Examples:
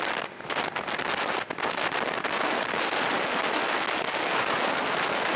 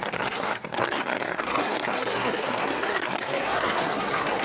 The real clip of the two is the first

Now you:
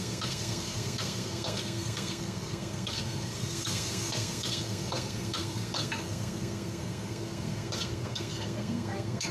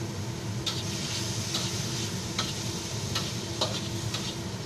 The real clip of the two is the second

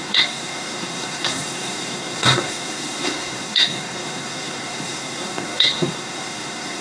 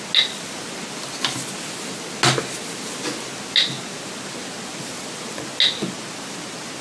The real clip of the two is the second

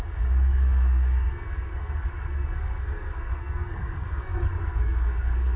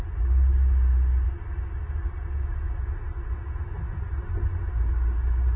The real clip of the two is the second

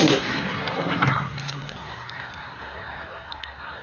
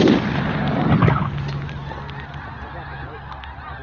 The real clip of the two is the second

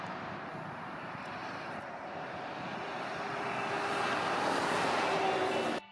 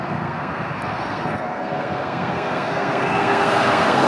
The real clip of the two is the first